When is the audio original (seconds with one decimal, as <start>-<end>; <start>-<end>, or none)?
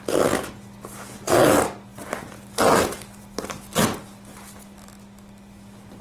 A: 0.0-6.0